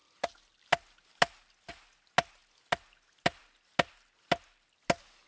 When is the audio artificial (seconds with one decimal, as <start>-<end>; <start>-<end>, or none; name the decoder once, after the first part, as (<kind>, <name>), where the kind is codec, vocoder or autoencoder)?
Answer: none

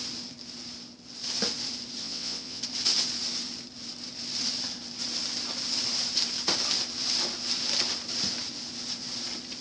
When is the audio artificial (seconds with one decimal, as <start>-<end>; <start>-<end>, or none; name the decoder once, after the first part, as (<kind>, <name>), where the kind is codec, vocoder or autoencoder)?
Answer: 2.0-2.6 (vocoder, WaveNeXt)

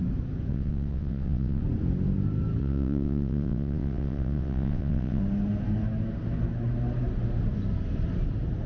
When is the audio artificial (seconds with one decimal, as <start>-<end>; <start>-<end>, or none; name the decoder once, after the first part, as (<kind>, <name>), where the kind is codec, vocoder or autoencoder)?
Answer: 0.5-1.6 (vocoder, WaveNeXt); 2.6-5.2

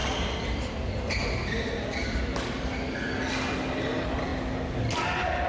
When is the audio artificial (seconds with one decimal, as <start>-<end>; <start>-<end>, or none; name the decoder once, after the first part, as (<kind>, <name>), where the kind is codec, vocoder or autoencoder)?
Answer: none

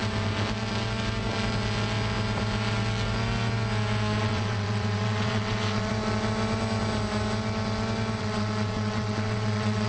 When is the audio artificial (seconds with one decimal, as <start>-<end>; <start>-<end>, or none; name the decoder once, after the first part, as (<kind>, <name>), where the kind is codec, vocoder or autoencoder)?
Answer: 4.2-5.9 (vocoder, WaveNeXt); 8.2-9.9

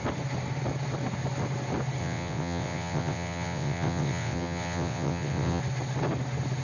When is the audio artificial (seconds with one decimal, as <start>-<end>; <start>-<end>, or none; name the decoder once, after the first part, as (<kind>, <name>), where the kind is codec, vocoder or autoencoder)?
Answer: 2.0-5.6 (vocoder, WaveNeXt)

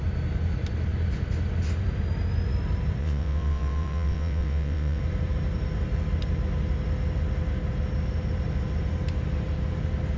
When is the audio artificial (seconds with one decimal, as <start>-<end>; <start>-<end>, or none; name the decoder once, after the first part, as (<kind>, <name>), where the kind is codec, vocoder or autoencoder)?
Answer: 3.0-5.0 (vocoder, WaveNeXt)